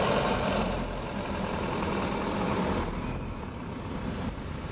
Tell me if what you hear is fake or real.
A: fake